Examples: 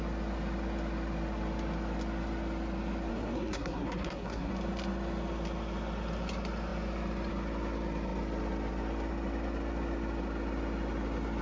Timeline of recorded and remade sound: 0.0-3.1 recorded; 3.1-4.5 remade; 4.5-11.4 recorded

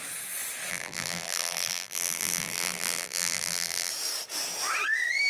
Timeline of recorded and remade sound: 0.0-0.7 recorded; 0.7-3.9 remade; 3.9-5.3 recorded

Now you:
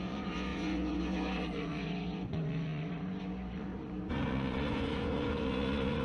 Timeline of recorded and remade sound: 0.0-6.0 remade

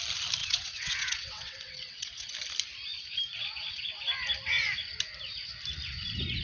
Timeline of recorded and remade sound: 0.0-0.4 recorded; 0.4-2.3 remade; 2.3-6.4 recorded